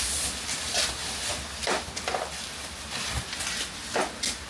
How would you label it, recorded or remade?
recorded